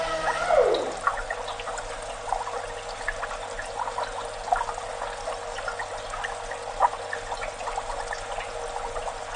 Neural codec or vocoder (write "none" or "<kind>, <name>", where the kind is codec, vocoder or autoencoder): none